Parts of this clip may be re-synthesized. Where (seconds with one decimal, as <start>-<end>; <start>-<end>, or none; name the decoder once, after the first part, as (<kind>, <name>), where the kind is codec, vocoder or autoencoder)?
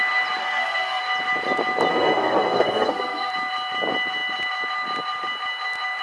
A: 0.4-1.0 (codec, SNAC); 1.9-3.3